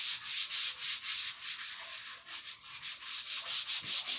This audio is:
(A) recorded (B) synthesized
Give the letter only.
A